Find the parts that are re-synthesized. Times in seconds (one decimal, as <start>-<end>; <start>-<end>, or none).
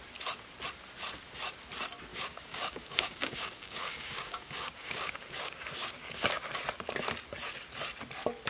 2.1-6.6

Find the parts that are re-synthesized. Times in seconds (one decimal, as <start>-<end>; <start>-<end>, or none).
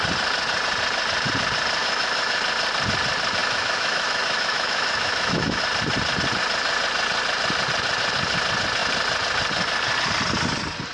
1.8-2.4; 3.4-5.6